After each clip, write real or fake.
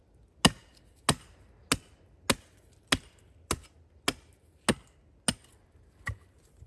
real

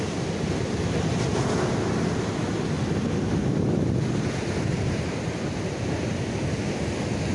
real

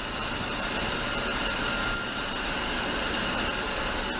real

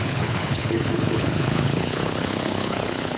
fake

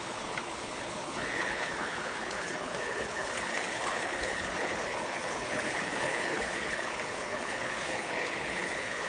fake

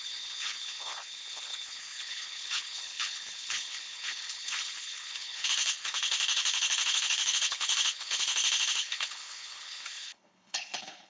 fake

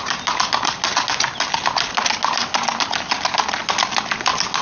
real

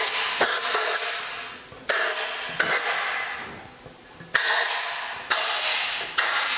real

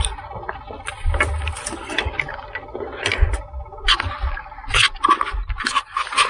real